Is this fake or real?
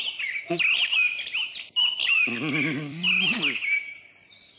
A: fake